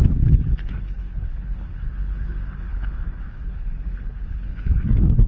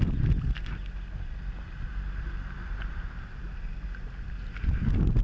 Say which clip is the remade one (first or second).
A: first